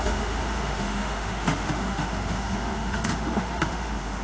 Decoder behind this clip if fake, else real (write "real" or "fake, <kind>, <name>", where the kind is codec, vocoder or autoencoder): fake, autoencoder, DAC-VAE